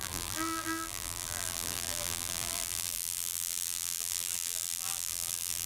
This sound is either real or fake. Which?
fake